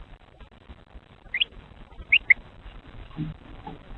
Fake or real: real